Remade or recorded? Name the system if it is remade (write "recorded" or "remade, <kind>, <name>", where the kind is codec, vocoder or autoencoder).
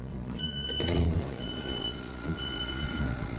remade, vocoder, Vocos